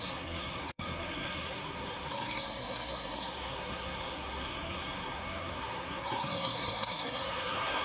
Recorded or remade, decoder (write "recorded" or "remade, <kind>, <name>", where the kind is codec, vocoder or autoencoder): remade, codec, SNAC